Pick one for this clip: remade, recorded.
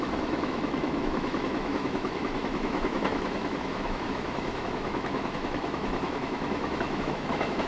remade